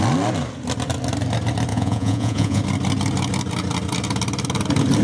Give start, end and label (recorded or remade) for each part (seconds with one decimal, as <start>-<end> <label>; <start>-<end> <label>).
0.0-1.7 recorded; 1.7-2.6 remade; 2.6-5.0 recorded